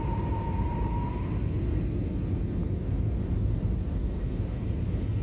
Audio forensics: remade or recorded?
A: recorded